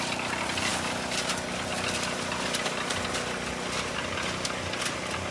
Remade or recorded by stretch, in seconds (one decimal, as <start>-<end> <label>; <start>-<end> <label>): 0.0-5.3 recorded